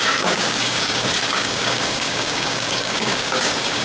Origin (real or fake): fake